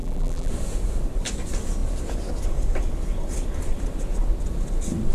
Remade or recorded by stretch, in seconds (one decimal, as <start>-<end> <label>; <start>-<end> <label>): 0.0-0.5 remade; 0.5-5.1 recorded